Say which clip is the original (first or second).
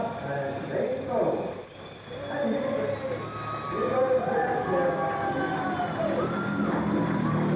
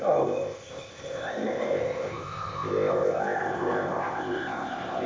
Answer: first